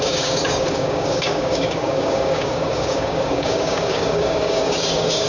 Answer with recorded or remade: remade